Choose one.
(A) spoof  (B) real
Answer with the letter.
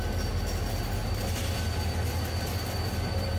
B